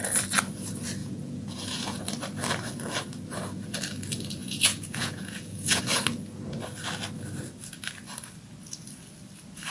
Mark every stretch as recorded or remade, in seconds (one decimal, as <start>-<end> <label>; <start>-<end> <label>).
0.0-1.0 recorded; 1.0-2.0 remade; 2.0-4.4 recorded; 4.4-5.8 remade; 5.8-9.7 recorded